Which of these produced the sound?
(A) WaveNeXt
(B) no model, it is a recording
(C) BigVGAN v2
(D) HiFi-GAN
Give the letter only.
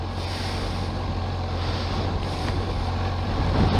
B